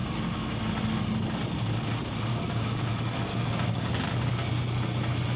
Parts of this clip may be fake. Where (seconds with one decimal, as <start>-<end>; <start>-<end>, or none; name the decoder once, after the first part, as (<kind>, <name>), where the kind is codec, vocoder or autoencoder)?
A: 0.0-0.6 (codec, DAC); 2.3-2.9; 3.3-3.9